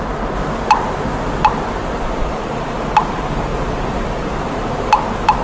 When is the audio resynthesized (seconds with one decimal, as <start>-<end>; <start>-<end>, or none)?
1.8-2.8; 3.5-4.5